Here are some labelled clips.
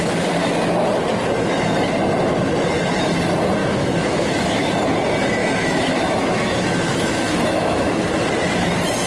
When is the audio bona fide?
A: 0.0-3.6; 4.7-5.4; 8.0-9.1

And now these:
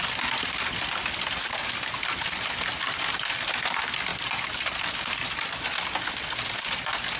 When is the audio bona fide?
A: 0.0-7.2

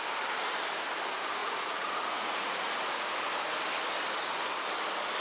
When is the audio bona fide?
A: 0.0-1.4; 3.2-5.2

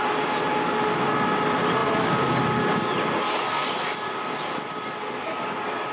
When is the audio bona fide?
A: 0.0-5.9

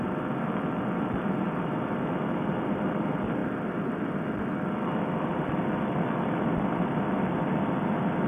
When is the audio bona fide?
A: 0.0-8.3

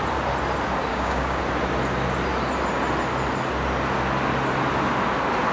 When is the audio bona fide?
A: 0.0-0.9; 1.4-5.5

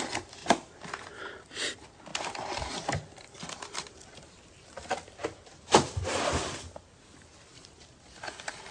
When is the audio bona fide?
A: 0.0-0.4; 1.0-2.1; 6.0-7.3